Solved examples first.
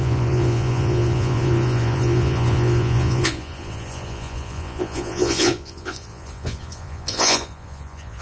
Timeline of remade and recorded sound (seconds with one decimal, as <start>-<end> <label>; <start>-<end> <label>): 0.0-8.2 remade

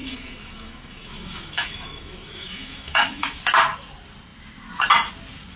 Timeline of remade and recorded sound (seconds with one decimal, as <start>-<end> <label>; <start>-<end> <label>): 0.0-3.4 remade; 3.4-5.6 recorded

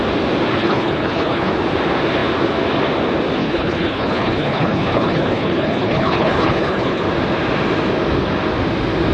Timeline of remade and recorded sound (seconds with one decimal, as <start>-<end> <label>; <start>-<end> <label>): 0.0-0.6 recorded; 0.6-1.5 remade; 1.5-3.4 recorded; 3.4-7.0 remade; 7.0-9.1 recorded